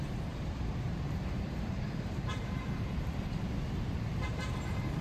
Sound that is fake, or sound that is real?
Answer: fake